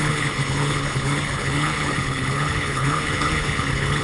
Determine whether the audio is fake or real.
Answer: fake